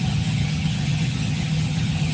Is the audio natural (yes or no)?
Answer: no